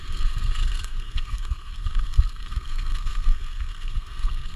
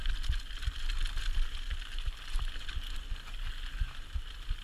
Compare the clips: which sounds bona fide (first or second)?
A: second